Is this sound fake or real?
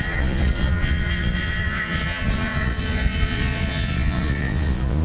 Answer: fake